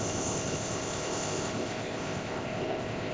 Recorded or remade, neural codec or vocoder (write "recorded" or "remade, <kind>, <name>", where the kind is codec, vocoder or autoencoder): remade, codec, ZipCodec